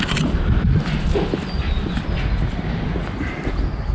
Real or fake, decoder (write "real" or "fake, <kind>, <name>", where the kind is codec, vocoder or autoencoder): real